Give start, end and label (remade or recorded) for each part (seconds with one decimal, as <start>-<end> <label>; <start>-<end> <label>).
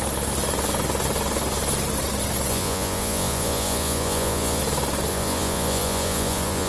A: 0.0-2.5 recorded; 2.5-4.6 remade; 4.6-5.1 recorded; 5.1-6.7 remade